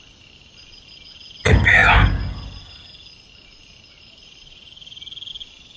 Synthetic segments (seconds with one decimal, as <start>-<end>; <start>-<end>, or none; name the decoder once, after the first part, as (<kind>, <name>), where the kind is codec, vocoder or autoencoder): none